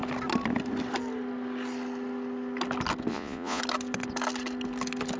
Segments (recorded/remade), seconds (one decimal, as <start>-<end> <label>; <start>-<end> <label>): 0.0-3.1 recorded; 3.1-3.6 remade; 3.6-5.2 recorded